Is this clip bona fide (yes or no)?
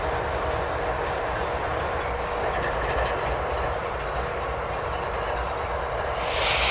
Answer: yes